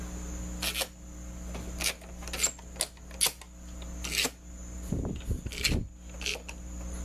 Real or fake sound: real